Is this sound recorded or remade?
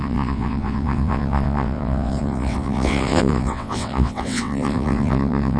remade